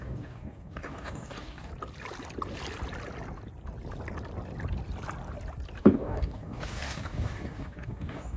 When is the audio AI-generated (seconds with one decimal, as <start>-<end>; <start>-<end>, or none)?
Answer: 0.0-1.7; 5.8-8.4